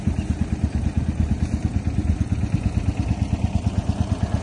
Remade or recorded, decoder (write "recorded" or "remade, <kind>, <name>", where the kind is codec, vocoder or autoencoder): recorded